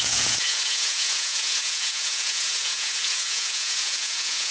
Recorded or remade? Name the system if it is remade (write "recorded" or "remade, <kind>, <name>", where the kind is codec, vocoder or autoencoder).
remade, vocoder, Vocos